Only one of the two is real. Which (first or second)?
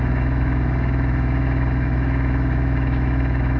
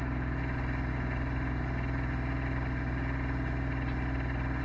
second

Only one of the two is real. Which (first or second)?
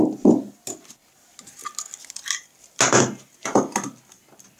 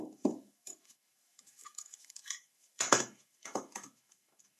first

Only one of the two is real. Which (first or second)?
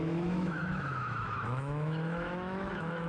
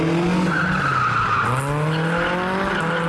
second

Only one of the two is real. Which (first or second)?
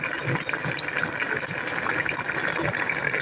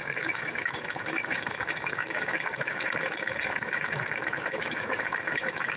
first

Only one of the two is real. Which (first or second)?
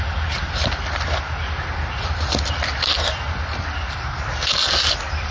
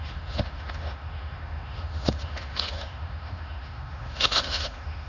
first